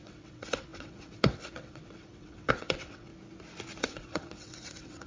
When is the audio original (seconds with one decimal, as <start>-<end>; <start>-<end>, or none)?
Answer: 3.1-3.8